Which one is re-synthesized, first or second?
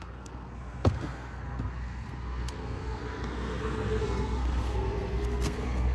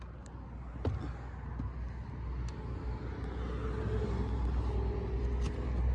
first